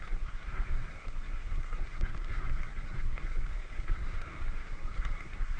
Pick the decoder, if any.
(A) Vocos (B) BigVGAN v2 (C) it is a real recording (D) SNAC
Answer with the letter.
D